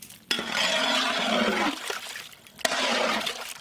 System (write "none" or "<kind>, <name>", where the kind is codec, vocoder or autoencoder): none